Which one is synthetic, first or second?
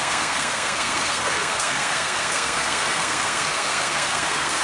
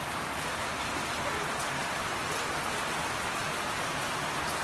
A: first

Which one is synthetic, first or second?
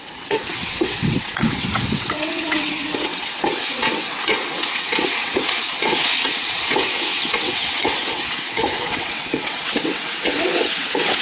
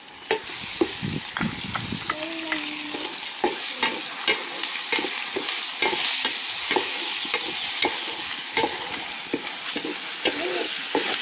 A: first